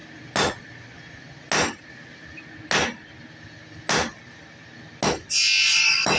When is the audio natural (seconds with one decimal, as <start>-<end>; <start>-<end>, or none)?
0.0-6.2